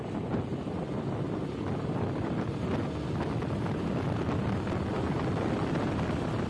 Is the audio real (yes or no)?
yes